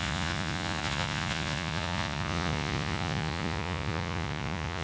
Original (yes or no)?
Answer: no